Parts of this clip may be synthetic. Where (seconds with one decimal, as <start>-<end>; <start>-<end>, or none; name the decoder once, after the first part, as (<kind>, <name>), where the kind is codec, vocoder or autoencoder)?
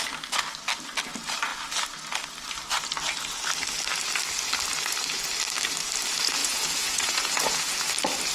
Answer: 6.4-7.9 (vocoder, Vocos)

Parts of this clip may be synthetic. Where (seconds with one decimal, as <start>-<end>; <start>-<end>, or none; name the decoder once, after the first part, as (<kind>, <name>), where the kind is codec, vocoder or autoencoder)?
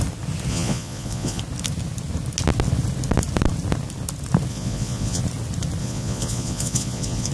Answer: 0.5-1.4 (vocoder, Vocos); 4.5-5.2; 5.8-7.3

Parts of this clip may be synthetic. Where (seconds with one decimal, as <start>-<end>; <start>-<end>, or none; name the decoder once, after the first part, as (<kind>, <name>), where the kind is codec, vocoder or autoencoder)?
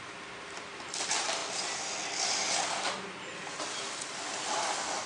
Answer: none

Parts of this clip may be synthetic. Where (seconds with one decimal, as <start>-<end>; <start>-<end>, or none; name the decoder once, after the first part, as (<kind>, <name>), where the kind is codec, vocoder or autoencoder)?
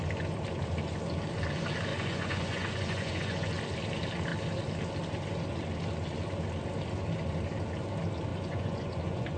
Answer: 1.9-3.5 (vocoder, Vocos); 8.3-9.4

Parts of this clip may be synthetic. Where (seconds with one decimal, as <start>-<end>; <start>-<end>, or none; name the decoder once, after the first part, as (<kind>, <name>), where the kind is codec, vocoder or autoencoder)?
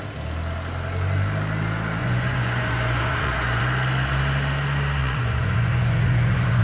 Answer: 2.0-3.6 (vocoder, Vocos); 5.0-6.6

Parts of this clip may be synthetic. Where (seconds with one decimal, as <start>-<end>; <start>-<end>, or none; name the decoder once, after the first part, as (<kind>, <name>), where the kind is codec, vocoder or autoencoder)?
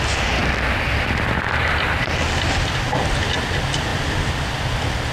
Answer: none